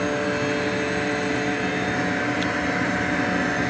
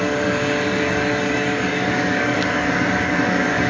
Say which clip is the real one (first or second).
first